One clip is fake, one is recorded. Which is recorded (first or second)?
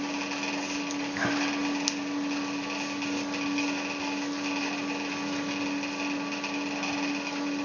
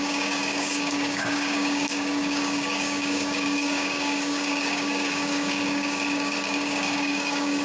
first